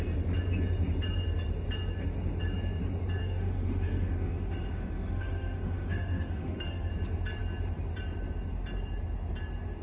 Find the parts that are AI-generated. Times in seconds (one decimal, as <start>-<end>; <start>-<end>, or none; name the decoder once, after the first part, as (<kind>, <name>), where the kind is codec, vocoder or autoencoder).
3.2-6.9 (autoencoder, DAC-VAE)